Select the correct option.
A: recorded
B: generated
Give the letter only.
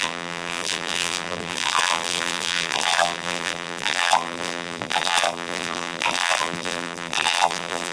B